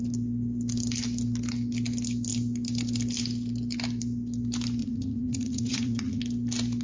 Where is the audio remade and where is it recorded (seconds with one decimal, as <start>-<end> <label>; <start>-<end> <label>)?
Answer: 0.0-4.8 recorded; 4.8-6.2 remade; 6.2-6.8 recorded